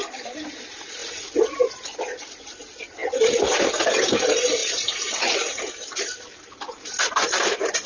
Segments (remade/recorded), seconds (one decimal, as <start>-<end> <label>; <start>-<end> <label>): 0.0-0.6 remade; 0.6-4.6 recorded; 4.6-6.9 remade; 6.9-7.9 recorded

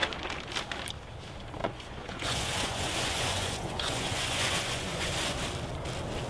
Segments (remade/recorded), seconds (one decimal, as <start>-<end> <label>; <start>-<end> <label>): 0.0-1.6 recorded; 1.6-5.4 remade; 5.4-6.3 recorded

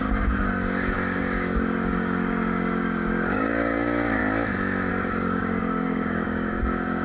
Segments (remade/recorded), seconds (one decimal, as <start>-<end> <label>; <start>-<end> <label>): 0.0-4.2 remade; 4.2-4.9 recorded; 4.9-7.0 remade

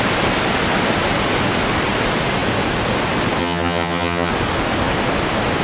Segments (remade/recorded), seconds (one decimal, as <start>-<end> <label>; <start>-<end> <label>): 0.0-3.4 recorded; 3.4-4.3 remade; 4.3-5.6 recorded